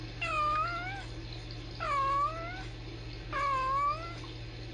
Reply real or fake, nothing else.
real